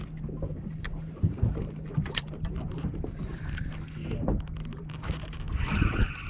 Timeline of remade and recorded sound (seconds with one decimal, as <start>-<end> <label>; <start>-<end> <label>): 0.0-0.7 recorded; 0.7-3.7 remade; 3.7-4.7 recorded; 4.7-5.4 remade; 5.4-6.3 recorded